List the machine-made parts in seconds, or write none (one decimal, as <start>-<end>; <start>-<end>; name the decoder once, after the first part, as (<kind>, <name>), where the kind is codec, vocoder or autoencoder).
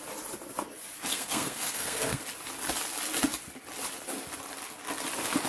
1.1-2.2 (codec, SNAC)